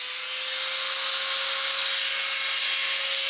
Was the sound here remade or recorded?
recorded